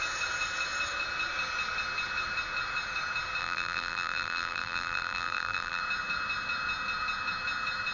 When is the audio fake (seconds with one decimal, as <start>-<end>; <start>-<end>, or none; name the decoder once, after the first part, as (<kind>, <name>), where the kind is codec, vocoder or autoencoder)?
3.4-5.8 (vocoder, BigVGAN v2)